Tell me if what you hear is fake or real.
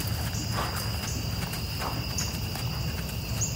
real